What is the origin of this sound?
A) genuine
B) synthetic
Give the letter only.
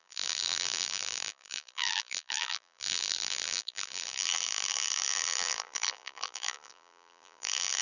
B